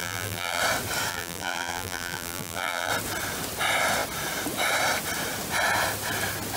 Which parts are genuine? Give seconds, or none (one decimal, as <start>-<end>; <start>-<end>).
0.6-1.1; 2.9-6.6